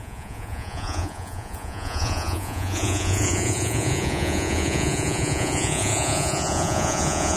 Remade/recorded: remade